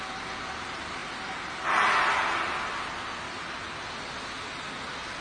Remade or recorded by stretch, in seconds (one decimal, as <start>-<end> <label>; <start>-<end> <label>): 0.0-5.2 recorded